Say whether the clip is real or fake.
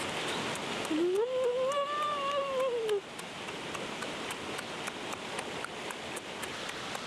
real